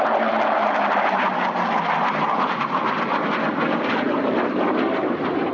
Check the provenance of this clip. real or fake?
real